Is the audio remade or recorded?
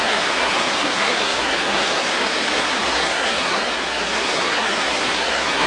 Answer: remade